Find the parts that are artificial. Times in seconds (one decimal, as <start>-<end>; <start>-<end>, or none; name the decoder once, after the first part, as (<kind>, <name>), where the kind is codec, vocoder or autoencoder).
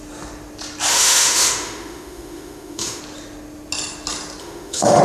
0.9-3.0 (autoencoder, DAC-VAE); 4.4-5.0